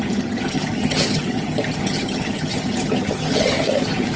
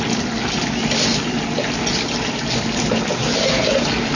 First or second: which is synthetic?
first